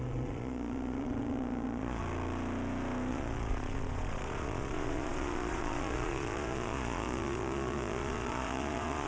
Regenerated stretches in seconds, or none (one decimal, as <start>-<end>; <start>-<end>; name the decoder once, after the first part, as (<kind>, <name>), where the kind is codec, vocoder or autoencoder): 0.0-2.0 (vocoder, Vocos); 3.1-9.1